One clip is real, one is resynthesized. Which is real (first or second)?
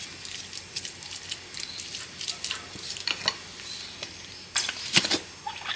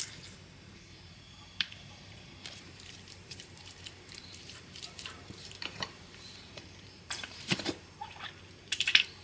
first